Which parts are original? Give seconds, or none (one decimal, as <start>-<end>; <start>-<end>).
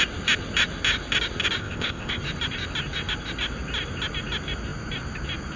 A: 0.0-1.6; 2.2-5.6